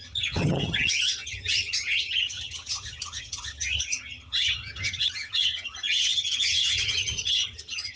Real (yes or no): no